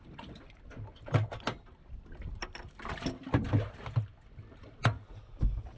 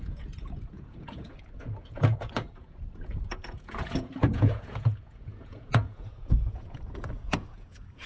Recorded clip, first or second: first